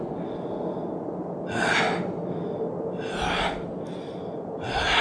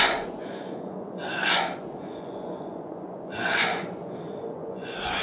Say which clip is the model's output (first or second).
second